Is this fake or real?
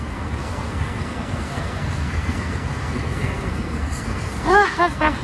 fake